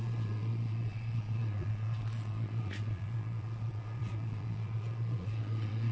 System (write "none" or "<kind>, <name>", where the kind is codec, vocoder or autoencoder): vocoder, Vocos